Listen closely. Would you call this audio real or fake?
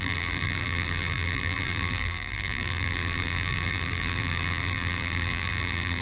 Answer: fake